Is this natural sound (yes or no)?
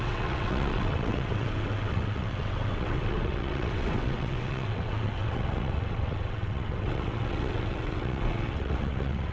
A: no